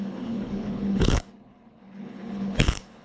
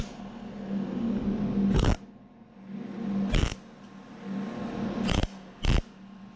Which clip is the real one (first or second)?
second